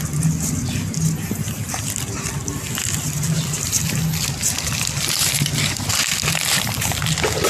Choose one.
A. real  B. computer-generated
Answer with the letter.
A